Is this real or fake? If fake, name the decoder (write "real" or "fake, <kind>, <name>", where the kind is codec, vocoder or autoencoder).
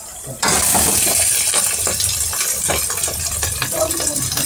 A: real